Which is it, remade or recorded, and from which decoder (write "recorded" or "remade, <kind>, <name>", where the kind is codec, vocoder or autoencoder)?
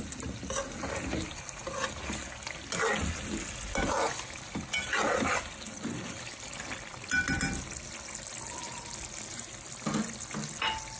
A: recorded